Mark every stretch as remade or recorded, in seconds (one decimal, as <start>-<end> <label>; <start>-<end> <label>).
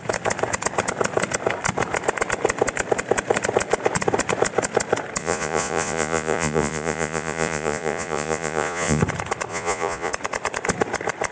0.0-5.2 recorded; 5.2-9.0 remade; 9.0-9.5 recorded; 9.5-10.1 remade; 10.1-11.3 recorded